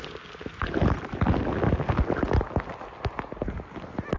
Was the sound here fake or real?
real